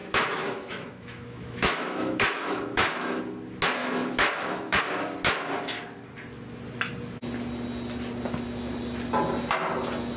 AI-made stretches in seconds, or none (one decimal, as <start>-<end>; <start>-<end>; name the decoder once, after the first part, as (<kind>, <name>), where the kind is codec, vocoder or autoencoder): 0.0-3.2 (autoencoder, DAC-VAE); 3.8-4.8

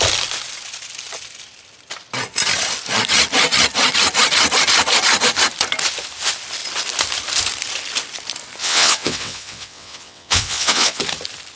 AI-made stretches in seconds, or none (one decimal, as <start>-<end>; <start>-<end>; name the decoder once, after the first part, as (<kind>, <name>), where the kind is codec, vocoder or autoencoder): 8.6-11.0 (vocoder, WaveNeXt)

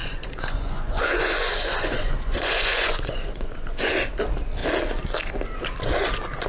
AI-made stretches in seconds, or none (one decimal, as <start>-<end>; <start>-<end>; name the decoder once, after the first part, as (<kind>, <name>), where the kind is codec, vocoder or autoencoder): 0.0-3.9 (vocoder, Vocos)

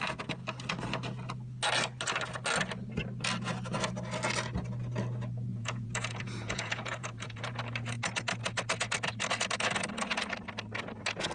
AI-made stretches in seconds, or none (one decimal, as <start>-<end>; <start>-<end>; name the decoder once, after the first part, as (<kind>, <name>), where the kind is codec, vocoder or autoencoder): 5.5-7.6 (vocoder, Vocos)

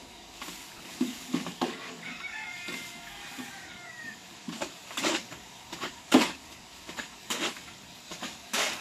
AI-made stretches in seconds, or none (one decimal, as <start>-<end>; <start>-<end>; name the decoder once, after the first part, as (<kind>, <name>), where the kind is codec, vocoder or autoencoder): 0.0-8.8 (codec, DAC)

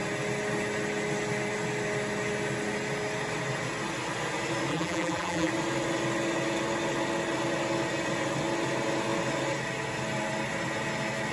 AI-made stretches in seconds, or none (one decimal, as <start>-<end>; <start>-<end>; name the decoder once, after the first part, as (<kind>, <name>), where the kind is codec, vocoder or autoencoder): 4.7-5.5 (vocoder, BigVGAN v2)

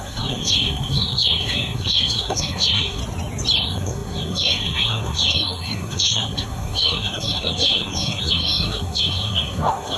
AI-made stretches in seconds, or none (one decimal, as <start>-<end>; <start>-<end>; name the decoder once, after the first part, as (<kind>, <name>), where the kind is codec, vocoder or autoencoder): 0.0-3.0 (codec, SNAC); 3.6-10.0

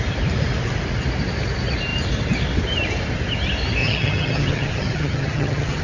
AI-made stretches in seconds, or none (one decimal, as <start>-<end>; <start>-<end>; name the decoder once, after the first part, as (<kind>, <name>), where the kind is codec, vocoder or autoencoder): 3.8-5.8 (vocoder, HiFi-GAN)